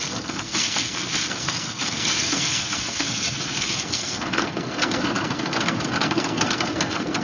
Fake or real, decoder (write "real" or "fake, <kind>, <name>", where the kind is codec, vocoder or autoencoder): fake, codec, SNAC